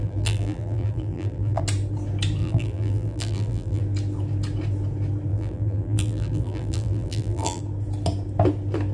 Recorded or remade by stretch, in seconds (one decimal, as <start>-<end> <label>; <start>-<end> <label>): 0.0-1.6 remade; 1.6-2.4 recorded; 2.4-3.8 remade; 3.8-5.3 recorded; 5.3-7.6 remade; 7.6-8.9 recorded